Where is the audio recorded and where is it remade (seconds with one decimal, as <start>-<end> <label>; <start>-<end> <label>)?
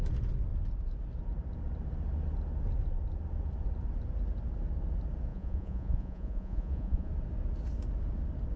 0.0-5.3 recorded; 5.3-7.1 remade; 7.1-8.6 recorded